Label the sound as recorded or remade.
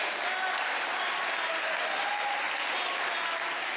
recorded